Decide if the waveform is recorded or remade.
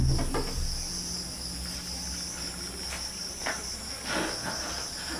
recorded